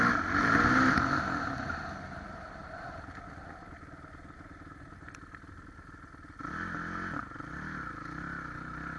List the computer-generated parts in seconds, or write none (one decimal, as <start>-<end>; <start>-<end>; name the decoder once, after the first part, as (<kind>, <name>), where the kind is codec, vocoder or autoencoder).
0.4-1.2 (vocoder, BigVGAN v2)